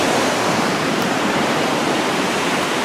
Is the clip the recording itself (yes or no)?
no